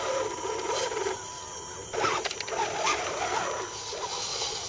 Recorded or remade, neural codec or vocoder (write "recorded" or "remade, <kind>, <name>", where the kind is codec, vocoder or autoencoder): recorded